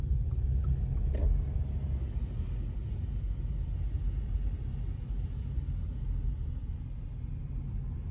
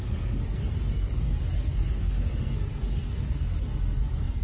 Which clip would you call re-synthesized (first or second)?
second